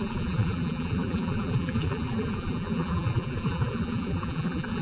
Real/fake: fake